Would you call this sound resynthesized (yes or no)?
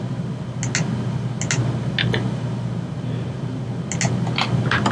no